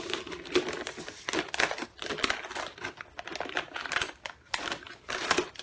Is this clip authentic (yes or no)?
yes